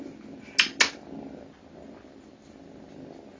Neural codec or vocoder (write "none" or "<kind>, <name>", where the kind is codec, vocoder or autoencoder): none